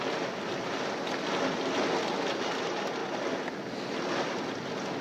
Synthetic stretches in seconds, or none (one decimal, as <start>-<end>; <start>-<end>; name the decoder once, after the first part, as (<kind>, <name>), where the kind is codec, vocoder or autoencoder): none